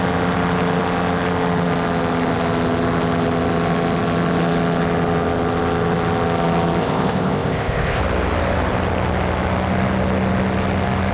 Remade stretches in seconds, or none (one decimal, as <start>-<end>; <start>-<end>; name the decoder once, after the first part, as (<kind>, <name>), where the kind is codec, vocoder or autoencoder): 6.8-8.0 (codec, ZipCodec)